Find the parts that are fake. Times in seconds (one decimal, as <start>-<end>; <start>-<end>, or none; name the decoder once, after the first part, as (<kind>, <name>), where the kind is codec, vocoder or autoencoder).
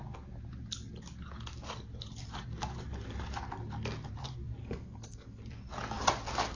4.6-5.4 (codec, SNAC)